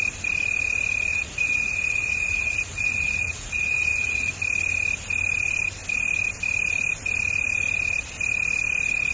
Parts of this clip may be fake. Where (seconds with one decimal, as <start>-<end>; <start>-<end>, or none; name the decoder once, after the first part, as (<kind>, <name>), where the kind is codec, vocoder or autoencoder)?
1.1-4.3 (vocoder, Vocos)